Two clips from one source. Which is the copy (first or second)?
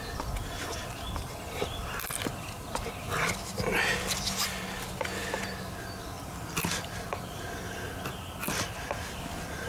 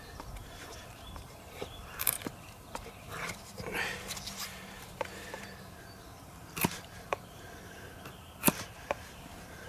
second